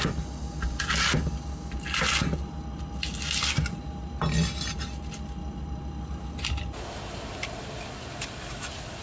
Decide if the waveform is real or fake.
real